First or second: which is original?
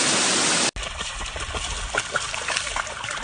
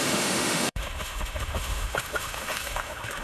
first